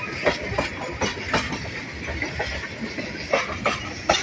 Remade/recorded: recorded